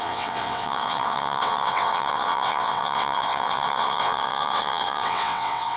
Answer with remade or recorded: remade